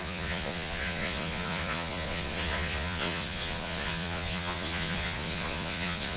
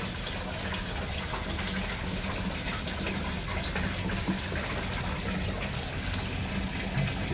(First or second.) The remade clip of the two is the first